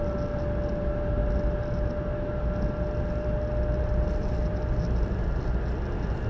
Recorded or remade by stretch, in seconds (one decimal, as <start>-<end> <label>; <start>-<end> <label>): 0.0-6.3 recorded

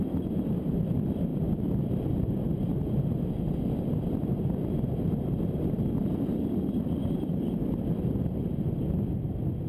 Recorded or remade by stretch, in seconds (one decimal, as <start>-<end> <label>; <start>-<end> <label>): 0.0-9.7 recorded

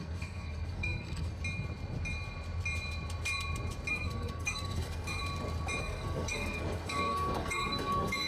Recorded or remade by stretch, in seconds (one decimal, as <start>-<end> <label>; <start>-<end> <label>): 0.0-1.4 remade; 1.4-3.9 recorded; 3.9-5.2 remade; 5.2-5.8 recorded; 5.8-8.3 remade

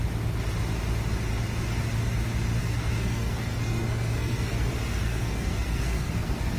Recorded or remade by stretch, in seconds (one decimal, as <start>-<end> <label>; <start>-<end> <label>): 0.0-2.6 recorded; 2.6-6.6 remade